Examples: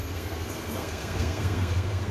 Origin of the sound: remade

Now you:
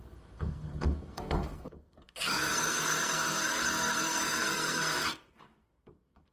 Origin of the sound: remade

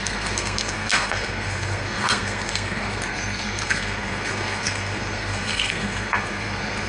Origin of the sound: remade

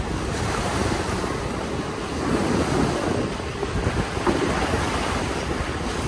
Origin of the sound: recorded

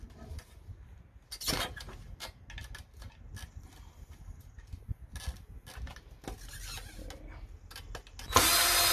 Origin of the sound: recorded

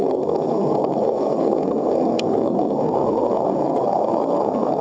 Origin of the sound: remade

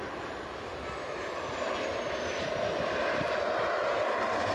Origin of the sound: recorded